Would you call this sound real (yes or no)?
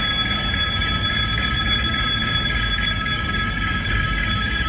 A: no